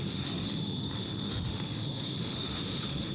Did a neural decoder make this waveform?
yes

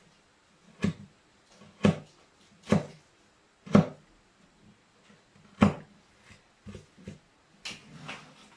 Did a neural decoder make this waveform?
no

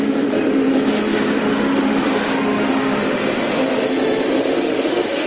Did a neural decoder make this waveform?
yes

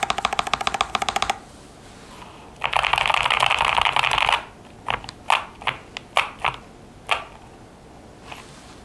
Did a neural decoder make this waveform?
no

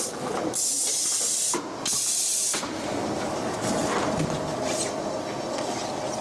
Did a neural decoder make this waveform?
no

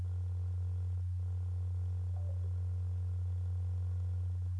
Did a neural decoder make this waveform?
no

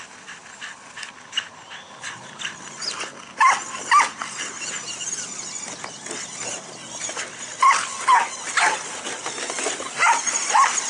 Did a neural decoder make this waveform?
no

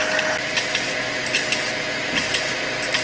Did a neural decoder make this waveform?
no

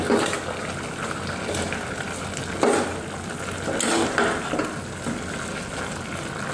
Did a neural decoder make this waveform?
no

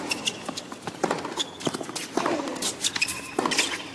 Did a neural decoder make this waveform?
no